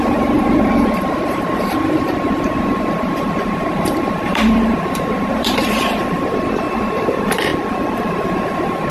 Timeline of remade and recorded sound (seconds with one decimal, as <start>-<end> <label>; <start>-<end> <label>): 0.0-7.5 remade; 7.5-8.1 recorded; 8.1-8.9 remade